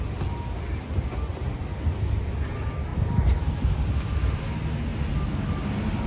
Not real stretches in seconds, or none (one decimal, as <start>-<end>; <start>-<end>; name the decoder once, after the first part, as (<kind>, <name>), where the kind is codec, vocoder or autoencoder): 1.3-2.5 (vocoder, BigVGAN v2)